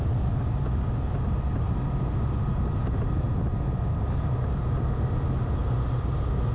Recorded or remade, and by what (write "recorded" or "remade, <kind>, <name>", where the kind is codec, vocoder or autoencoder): recorded